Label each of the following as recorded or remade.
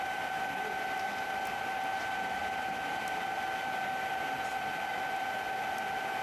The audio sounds recorded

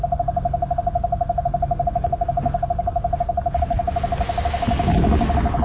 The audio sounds recorded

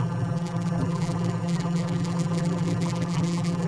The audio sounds remade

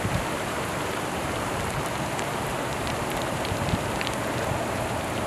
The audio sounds remade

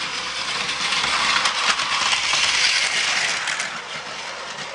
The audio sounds recorded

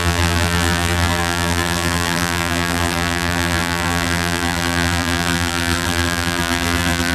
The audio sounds remade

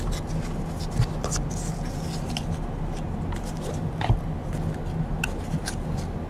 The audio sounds recorded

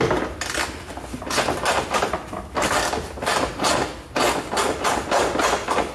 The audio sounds recorded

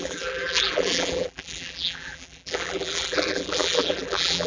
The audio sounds remade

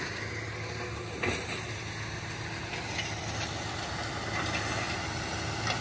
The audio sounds recorded